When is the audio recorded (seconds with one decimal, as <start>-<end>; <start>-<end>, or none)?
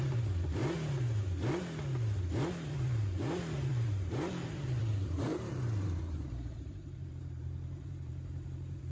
0.6-2.5